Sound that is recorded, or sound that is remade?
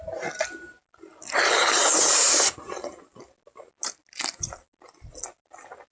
recorded